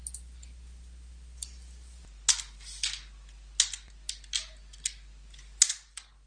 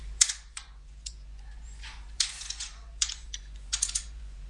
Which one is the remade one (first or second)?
second